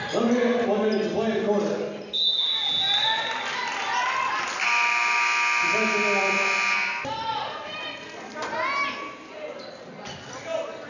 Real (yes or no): yes